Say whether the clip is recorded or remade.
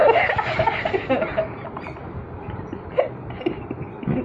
recorded